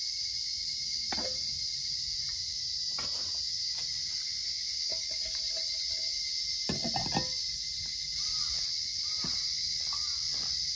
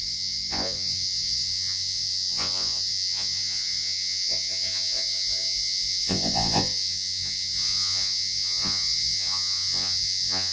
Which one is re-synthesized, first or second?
second